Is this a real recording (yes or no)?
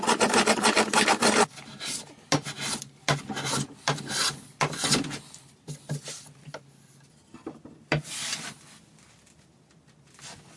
yes